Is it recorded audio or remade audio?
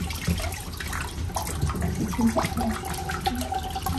recorded